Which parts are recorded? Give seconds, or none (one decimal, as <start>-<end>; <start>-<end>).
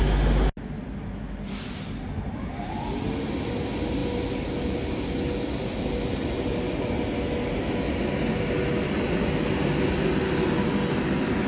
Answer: 0.0-11.5